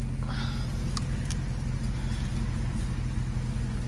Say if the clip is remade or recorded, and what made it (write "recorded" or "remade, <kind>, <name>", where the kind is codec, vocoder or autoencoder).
recorded